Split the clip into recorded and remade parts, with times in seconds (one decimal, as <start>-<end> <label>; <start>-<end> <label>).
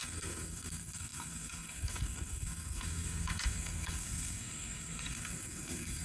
0.0-6.0 remade